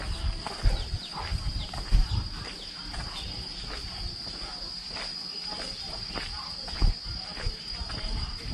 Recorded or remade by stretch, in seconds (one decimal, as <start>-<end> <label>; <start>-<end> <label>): 0.0-1.3 recorded; 1.3-2.1 remade; 2.1-8.5 recorded